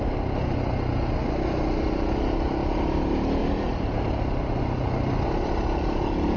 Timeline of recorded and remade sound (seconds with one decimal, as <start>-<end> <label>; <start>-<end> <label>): 0.0-3.4 recorded; 3.4-4.0 remade; 4.0-6.4 recorded